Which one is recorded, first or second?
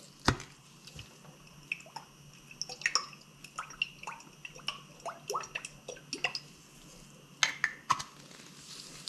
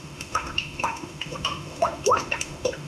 first